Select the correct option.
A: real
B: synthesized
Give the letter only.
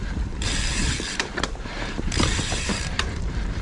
B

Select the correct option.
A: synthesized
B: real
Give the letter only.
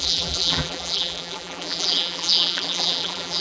A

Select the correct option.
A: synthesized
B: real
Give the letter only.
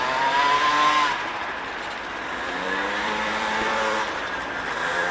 A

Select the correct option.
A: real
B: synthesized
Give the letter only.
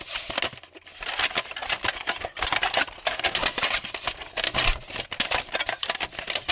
A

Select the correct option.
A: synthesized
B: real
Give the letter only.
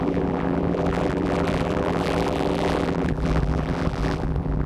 A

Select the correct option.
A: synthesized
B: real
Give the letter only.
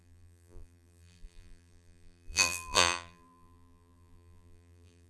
A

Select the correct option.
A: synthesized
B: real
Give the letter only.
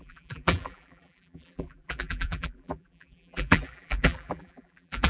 A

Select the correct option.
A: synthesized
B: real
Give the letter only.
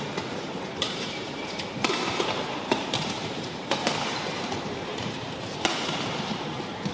A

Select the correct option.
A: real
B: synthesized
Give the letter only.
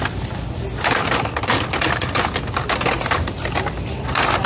A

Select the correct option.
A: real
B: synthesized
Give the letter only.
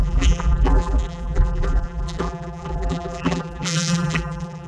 B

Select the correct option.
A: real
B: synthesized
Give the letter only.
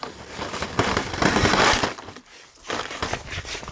B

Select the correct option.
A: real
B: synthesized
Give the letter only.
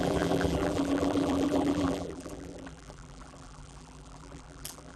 B